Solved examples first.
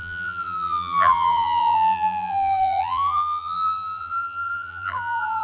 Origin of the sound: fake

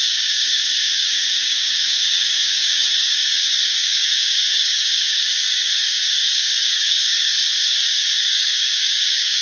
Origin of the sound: fake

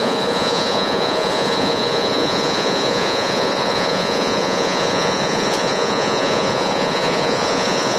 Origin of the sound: fake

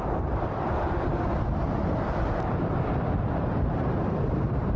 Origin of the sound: fake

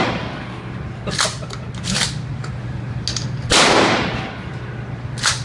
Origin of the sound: real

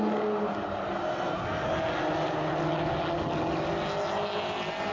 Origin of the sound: real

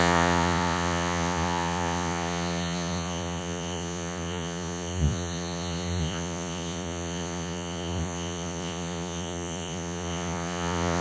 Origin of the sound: fake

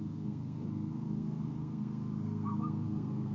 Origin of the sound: fake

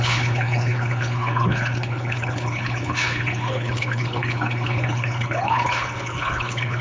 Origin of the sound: fake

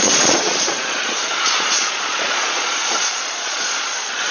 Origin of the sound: fake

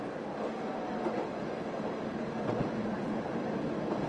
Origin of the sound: real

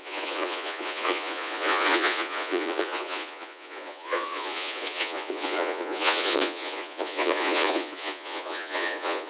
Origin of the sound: fake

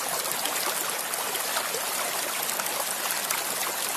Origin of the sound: real